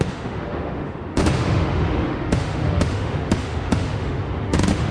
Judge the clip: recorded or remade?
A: remade